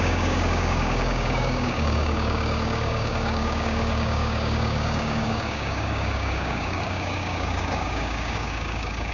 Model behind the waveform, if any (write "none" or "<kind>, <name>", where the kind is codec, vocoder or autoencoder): codec, DAC